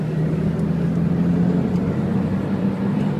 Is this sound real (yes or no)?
yes